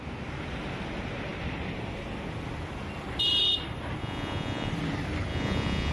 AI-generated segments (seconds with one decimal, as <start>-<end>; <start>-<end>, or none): 4.0-4.7; 5.3-5.9

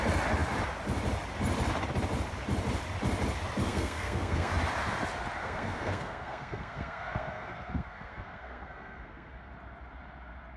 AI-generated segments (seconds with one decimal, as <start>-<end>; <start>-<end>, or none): 3.7-4.5; 5.4-9.5

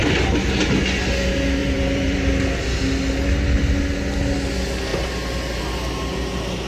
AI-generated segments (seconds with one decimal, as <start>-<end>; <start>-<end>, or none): 1.6-2.3; 4.9-5.6

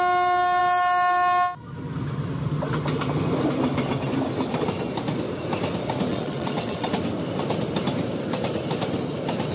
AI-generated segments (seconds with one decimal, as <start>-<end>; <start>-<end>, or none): 6.1-6.9

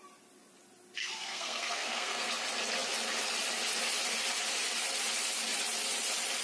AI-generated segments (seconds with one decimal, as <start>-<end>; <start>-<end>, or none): 1.0-2.3

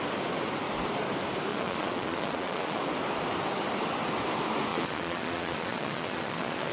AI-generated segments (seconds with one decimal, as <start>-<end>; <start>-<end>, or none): 1.5-2.8; 4.7-6.7